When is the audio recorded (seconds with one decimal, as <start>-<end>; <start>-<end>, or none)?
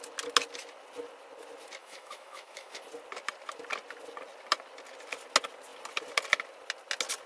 0.0-1.8; 2.8-7.3